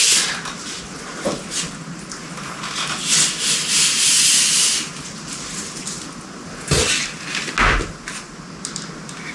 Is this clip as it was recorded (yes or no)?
yes